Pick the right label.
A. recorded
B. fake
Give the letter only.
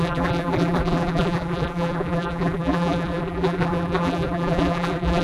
B